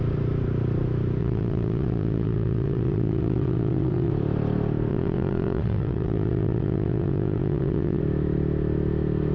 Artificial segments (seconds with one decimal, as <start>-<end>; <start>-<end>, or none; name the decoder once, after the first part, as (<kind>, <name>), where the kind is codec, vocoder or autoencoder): 1.2-4.1 (vocoder, WaveNeXt); 4.9-8.0